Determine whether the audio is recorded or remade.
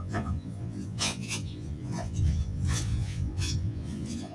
remade